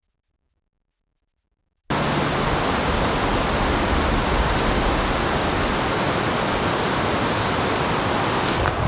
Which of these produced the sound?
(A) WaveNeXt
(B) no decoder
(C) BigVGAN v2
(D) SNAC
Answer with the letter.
B